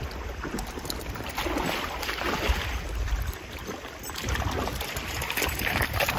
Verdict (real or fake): real